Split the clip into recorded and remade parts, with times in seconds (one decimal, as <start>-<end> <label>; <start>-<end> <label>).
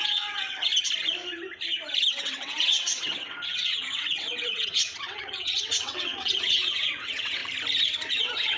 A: 0.0-0.7 remade; 0.7-2.1 recorded; 2.1-7.4 remade; 7.4-8.1 recorded; 8.1-8.6 remade